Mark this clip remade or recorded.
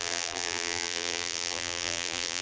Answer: remade